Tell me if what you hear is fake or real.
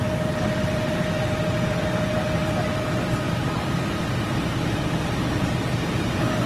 real